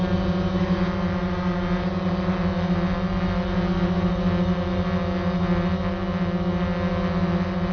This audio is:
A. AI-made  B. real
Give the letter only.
B